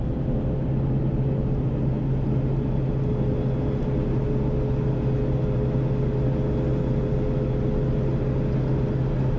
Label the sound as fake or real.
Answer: real